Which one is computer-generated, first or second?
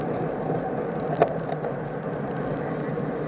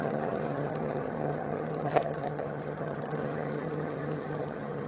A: second